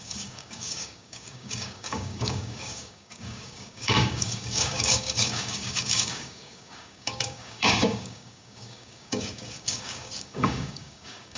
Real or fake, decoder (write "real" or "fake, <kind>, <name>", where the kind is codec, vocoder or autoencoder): fake, codec, DAC